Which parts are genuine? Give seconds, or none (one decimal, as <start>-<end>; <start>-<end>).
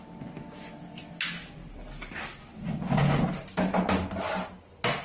0.0-5.0